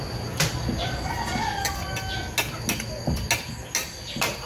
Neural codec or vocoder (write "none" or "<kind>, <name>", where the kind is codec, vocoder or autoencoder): none